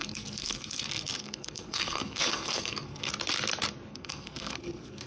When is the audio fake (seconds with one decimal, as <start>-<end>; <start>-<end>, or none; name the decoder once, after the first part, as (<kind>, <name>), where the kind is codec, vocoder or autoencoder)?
0.0-3.1 (codec, SNAC); 3.9-5.1